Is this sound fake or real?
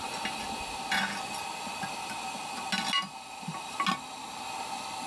real